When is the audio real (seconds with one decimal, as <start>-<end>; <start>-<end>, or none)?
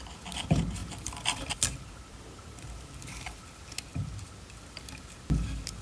0.0-0.8; 3.4-5.8